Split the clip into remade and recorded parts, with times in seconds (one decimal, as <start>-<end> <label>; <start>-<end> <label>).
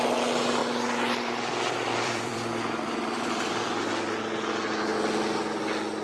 0.0-0.6 recorded; 0.6-3.9 remade; 3.9-6.0 recorded